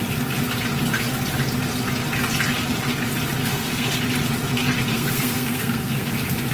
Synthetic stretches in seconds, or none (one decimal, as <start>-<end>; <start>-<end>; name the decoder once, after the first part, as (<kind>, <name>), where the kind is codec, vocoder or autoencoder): 3.4-4.0 (codec, SNAC); 4.9-6.5